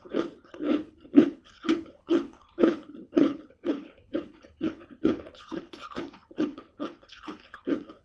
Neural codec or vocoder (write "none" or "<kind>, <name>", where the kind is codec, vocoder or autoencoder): codec, HILCodec